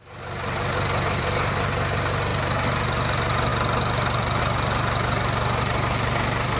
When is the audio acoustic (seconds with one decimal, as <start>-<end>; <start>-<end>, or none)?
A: 0.0-6.6